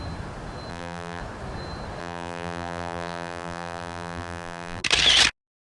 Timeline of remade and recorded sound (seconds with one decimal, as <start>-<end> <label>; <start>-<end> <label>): 0.0-0.7 recorded; 0.7-1.2 remade; 1.2-2.0 recorded; 2.0-4.8 remade; 4.8-5.8 recorded